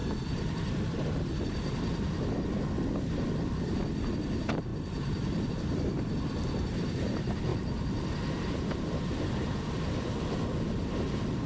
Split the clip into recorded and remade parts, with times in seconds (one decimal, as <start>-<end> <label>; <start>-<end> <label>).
0.0-7.5 remade; 7.5-8.5 recorded; 8.5-11.5 remade